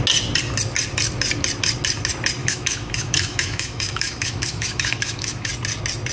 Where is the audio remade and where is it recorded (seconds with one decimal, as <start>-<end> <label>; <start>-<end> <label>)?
0.0-2.4 recorded; 2.4-5.5 remade; 5.5-6.1 recorded